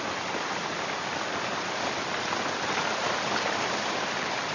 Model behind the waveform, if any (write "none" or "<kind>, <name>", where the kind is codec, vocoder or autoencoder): none